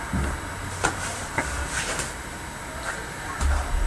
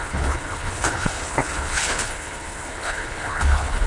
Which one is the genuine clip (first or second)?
first